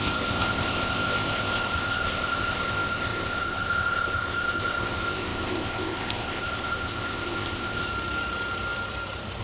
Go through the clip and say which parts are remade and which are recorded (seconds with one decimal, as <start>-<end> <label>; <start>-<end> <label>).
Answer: 0.0-7.9 remade; 7.9-9.4 recorded